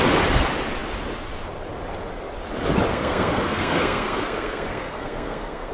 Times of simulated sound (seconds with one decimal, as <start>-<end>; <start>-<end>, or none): 2.9-5.7